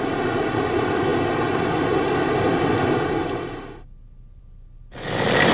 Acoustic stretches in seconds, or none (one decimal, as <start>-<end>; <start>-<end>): 0.0-5.5